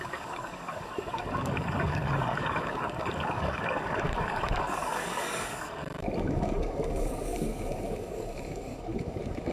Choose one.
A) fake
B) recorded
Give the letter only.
A